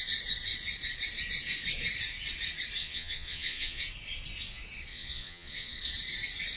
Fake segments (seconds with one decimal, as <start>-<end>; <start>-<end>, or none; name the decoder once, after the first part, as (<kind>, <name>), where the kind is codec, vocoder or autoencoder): 2.8-3.8 (vocoder, Vocos); 4.9-5.8